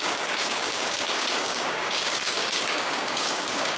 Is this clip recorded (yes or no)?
no